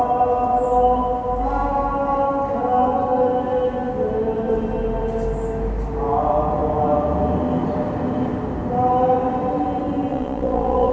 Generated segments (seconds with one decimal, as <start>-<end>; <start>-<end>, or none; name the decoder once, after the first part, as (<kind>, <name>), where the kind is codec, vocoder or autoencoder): 10.1-10.9 (vocoder, Vocos)